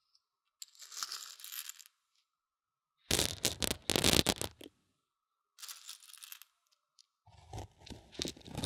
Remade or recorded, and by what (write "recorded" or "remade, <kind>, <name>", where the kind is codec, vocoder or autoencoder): recorded